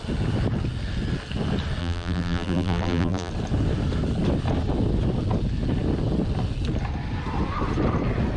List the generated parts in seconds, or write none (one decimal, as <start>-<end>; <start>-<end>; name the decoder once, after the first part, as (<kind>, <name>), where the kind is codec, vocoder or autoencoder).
1.8-3.3 (vocoder, BigVGAN v2)